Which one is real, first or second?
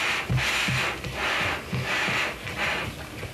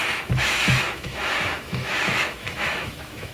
first